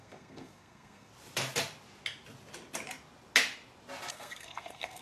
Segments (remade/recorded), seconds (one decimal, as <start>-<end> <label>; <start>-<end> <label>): 0.0-1.1 remade; 1.1-4.1 recorded; 4.1-5.0 remade